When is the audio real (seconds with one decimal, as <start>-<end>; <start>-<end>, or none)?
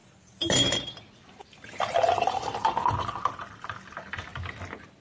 4.3-5.0